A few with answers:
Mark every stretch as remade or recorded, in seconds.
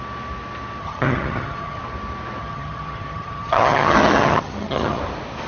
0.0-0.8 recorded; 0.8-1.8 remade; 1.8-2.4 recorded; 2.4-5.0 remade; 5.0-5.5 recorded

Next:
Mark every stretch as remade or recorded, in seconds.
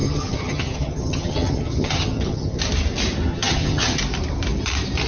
0.0-2.6 remade; 2.6-3.3 recorded; 3.3-4.0 remade; 4.0-5.1 recorded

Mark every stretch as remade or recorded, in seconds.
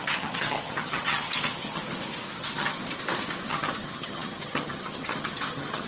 0.0-1.8 remade; 1.8-2.4 recorded; 2.4-2.8 remade; 2.8-3.5 recorded; 3.5-5.9 remade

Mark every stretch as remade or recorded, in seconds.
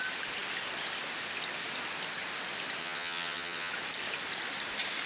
0.0-2.8 recorded; 2.8-3.7 remade; 3.7-5.1 recorded